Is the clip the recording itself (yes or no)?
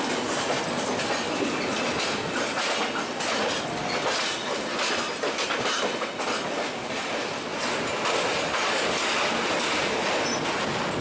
yes